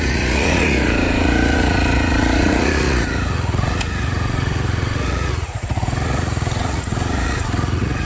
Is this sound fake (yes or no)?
yes